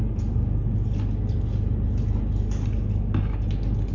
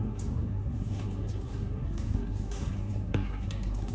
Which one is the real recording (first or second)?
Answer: first